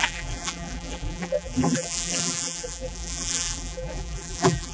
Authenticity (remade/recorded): remade